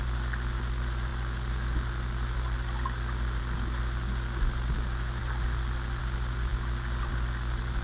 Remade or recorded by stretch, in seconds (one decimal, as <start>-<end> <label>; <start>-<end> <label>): 0.0-7.8 recorded